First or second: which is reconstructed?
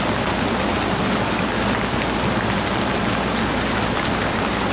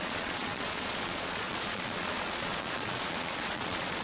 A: second